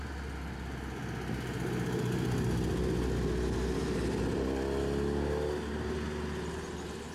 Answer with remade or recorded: recorded